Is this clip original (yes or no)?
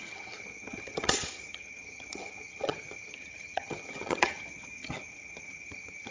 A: no